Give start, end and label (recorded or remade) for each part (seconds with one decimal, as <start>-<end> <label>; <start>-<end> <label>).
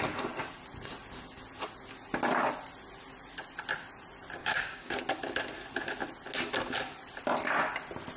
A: 0.0-4.4 recorded; 4.4-5.0 remade; 5.0-8.2 recorded